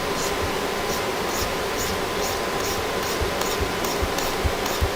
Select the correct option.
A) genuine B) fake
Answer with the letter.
A